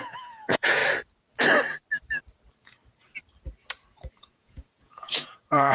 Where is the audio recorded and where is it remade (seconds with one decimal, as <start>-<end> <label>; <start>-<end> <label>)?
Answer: 0.0-0.8 remade; 0.8-4.2 recorded; 4.2-5.7 remade